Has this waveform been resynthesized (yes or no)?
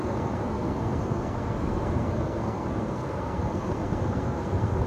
yes